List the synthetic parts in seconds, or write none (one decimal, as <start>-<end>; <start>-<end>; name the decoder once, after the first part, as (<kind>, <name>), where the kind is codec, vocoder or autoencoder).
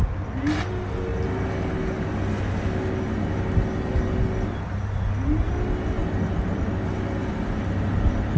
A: none